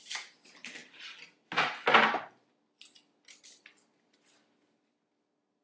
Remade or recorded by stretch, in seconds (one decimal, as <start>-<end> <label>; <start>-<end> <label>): 0.0-5.6 recorded